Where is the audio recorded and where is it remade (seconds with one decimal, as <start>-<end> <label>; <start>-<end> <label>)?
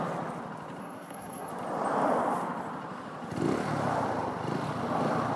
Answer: 0.0-0.8 recorded; 0.8-1.5 remade; 1.5-5.4 recorded